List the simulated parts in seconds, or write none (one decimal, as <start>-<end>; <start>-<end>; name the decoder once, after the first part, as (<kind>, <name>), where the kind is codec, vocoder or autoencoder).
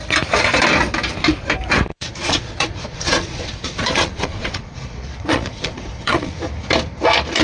1.9-6.3 (vocoder, Vocos)